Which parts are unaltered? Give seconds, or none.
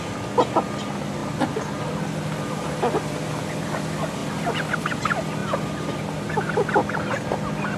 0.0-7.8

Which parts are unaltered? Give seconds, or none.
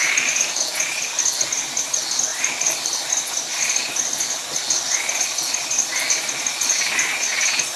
0.0-2.3; 3.1-7.8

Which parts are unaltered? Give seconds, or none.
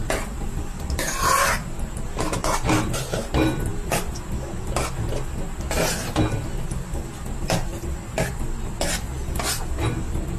0.0-7.7; 8.3-10.4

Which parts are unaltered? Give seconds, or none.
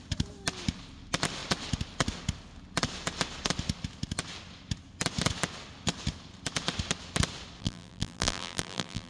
0.0-7.6